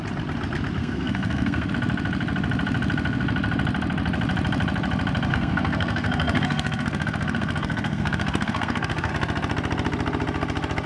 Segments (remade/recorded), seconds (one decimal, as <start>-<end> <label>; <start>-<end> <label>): 0.0-0.8 recorded; 0.8-1.7 remade; 1.7-5.3 recorded; 5.3-9.1 remade; 9.1-10.9 recorded